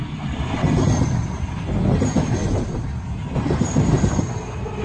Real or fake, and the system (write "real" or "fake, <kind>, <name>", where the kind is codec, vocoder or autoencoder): real